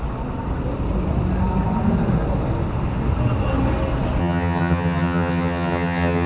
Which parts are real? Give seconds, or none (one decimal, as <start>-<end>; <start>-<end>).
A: 0.0-4.2